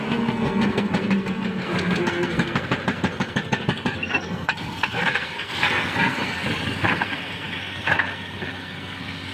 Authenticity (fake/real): fake